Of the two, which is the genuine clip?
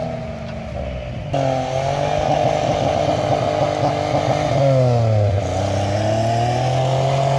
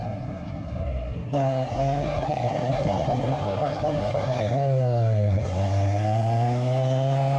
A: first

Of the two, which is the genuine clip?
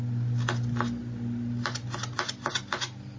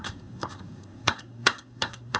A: first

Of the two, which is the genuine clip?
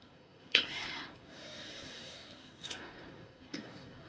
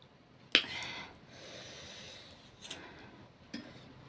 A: second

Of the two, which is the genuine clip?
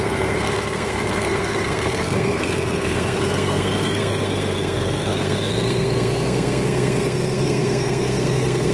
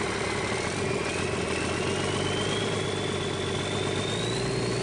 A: second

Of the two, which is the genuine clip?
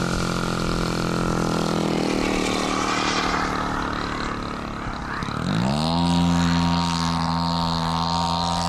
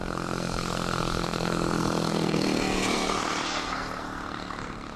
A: first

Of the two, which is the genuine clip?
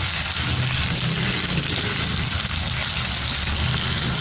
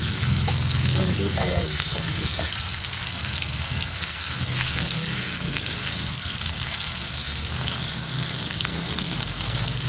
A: first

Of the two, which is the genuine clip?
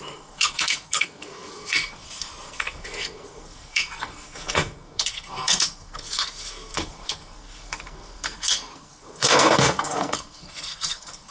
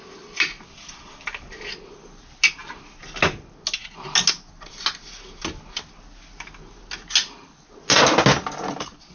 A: second